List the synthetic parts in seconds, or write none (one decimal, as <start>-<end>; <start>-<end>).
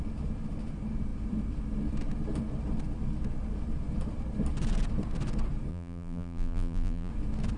5.7-7.1